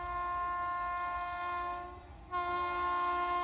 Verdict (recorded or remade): recorded